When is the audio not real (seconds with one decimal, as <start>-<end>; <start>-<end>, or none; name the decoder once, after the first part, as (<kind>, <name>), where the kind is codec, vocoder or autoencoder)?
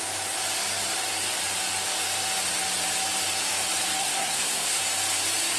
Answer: 4.0-4.8 (codec, SNAC)